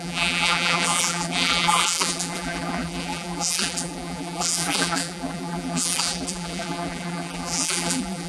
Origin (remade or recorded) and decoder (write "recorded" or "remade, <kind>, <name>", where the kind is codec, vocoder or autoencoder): remade, vocoder, BigVGAN v2